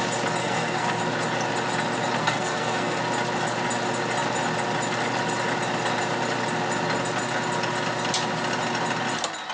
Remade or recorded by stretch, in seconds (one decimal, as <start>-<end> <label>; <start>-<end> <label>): 0.0-0.4 recorded; 0.4-1.0 remade; 1.0-2.2 recorded; 2.2-3.0 remade; 3.0-9.5 recorded